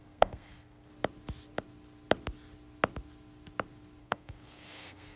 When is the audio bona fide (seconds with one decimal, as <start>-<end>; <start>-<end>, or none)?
0.9-4.0